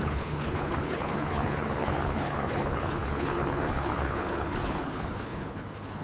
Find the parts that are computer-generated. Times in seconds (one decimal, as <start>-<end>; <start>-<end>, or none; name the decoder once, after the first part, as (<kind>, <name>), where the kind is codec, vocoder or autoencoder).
0.0-6.0 (codec, HILCodec)